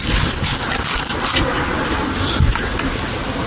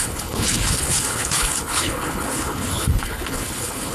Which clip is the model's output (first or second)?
second